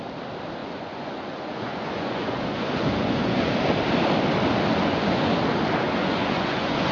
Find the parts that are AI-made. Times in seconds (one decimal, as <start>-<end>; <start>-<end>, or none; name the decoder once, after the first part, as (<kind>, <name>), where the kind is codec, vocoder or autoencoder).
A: 0.6-3.5 (vocoder, Vocos); 4.7-5.4; 6.0-6.9